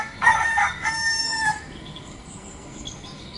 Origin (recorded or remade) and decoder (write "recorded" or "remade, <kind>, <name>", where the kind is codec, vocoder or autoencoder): remade, codec, SNAC